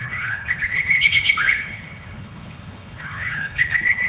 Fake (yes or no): yes